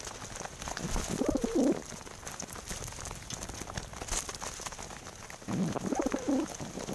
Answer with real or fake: real